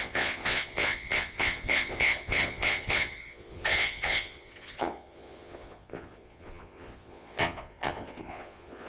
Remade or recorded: remade